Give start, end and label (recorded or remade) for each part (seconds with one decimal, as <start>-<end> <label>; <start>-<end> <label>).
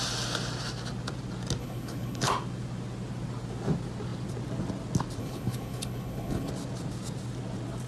0.0-1.6 recorded; 1.6-2.3 remade; 2.3-5.2 recorded; 5.2-6.5 remade; 6.5-7.9 recorded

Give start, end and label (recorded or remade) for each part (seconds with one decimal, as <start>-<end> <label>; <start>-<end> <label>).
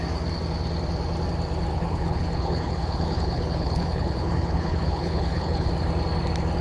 0.0-1.7 recorded; 1.7-5.7 remade; 5.7-6.6 recorded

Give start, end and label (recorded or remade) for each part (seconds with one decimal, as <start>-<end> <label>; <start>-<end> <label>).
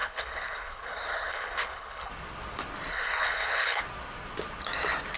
0.0-2.1 remade; 2.1-2.9 recorded; 2.9-3.8 remade; 3.8-5.2 recorded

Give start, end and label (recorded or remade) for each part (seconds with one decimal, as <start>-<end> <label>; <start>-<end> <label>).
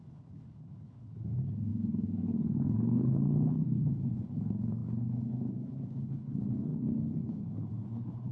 0.0-8.3 remade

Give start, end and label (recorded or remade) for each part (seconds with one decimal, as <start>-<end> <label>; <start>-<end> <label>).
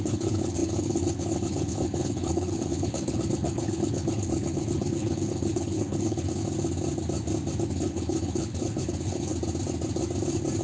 0.0-6.4 remade; 6.4-7.6 recorded; 7.6-9.3 remade; 9.3-10.6 recorded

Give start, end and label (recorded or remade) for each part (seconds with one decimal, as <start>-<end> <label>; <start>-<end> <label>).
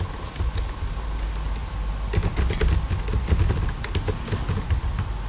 0.0-5.3 recorded